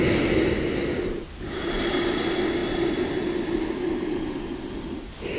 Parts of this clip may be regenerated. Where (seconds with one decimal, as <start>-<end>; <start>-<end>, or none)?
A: none